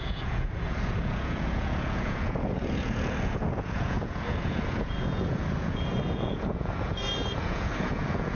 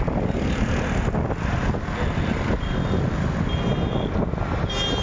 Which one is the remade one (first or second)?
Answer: first